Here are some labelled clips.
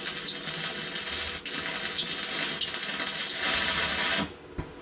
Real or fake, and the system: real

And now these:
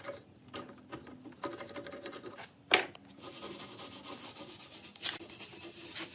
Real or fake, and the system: real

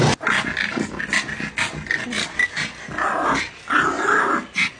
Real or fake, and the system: real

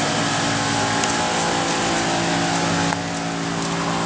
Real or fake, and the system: real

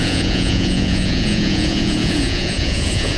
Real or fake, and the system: fake, vocoder, Vocos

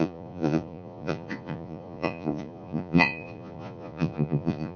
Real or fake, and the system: fake, vocoder, Vocos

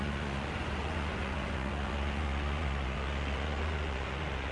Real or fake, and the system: fake, vocoder, Vocos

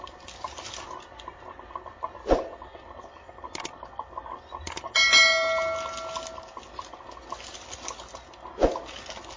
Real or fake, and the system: real